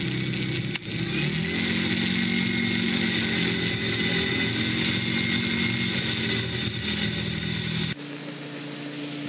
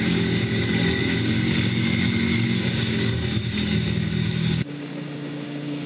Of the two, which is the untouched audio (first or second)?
first